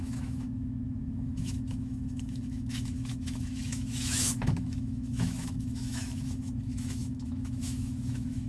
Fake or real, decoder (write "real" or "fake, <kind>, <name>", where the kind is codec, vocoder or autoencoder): fake, autoencoder, DAC-VAE